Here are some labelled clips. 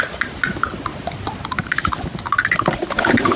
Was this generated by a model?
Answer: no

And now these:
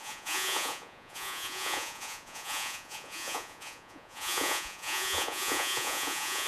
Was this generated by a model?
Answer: yes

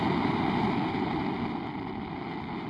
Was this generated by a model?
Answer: no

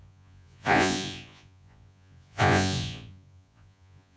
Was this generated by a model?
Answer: yes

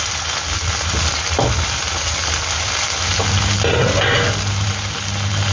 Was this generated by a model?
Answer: no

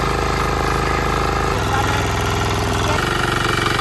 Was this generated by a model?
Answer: no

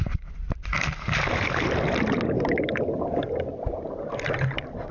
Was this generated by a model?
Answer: no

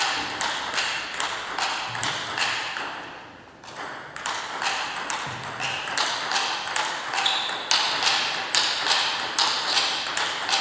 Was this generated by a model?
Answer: no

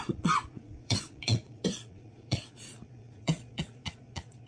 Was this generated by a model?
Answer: yes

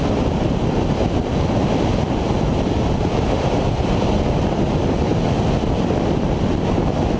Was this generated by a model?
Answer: no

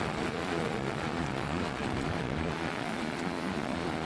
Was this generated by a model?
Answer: yes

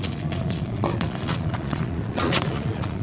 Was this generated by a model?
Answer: yes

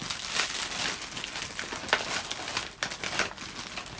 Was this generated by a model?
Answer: no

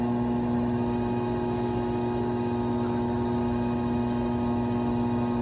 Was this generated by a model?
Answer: no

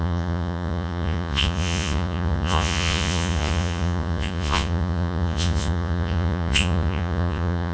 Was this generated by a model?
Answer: yes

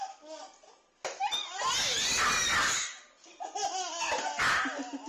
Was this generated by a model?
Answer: no